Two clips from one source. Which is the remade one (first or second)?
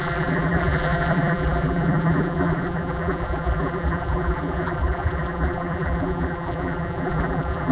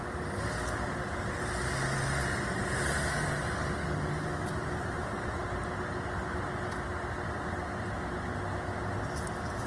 first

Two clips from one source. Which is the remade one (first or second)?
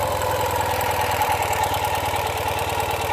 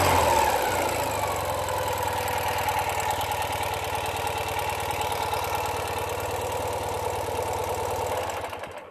first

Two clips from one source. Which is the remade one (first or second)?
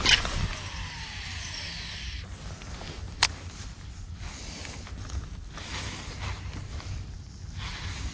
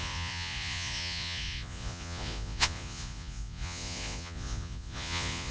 second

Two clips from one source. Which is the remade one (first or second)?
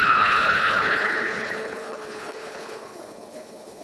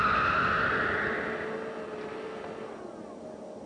first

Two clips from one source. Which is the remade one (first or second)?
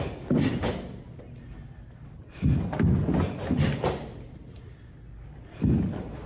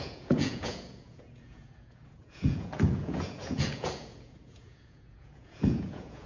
second